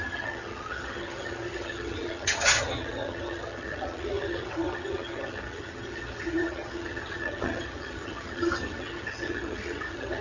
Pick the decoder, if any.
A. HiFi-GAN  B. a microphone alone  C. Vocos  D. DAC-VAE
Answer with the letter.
A